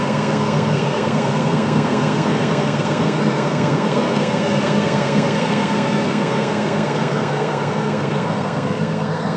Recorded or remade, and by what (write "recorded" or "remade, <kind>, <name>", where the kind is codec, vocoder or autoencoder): remade, codec, SNAC